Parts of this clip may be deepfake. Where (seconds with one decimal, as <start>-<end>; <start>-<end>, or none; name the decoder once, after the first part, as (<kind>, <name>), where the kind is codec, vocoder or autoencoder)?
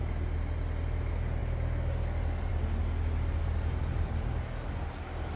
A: none